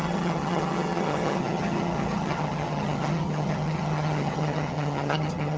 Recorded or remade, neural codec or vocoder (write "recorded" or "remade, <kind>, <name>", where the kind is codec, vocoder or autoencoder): remade, vocoder, HiFi-GAN